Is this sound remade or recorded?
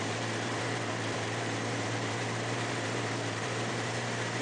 remade